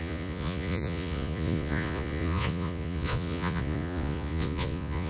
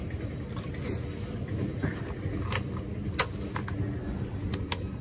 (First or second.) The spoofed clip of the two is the first